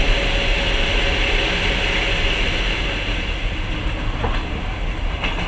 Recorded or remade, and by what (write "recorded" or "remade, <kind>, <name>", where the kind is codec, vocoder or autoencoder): recorded